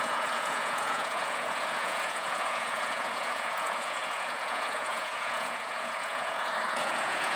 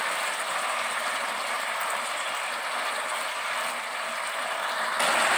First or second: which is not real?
first